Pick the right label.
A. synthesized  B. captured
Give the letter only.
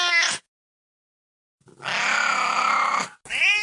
B